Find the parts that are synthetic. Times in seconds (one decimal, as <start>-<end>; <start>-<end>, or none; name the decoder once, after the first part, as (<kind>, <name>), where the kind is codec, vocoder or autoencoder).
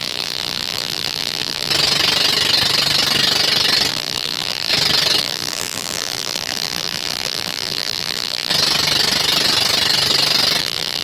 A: 0.0-1.7 (vocoder, BigVGAN v2); 3.9-4.7; 5.2-8.5; 10.6-11.0